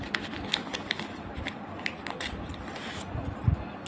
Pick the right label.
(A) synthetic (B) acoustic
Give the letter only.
B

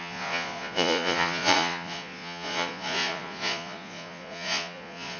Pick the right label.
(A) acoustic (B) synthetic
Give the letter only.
B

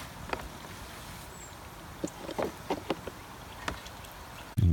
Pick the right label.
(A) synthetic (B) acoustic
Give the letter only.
B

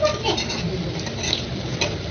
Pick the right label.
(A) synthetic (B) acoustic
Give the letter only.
B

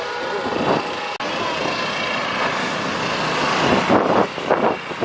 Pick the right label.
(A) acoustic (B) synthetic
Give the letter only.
A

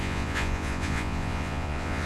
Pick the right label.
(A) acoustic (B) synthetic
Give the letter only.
B